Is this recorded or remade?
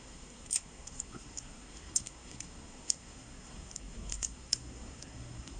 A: remade